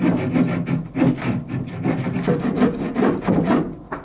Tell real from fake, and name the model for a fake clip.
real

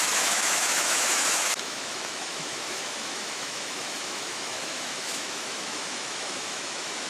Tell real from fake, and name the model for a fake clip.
fake, autoencoder, DAC-VAE